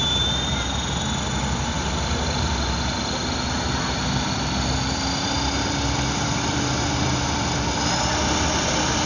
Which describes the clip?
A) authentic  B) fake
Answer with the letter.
A